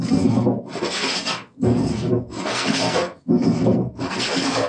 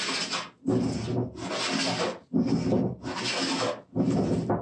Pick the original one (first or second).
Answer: second